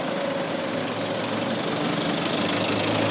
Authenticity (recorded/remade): recorded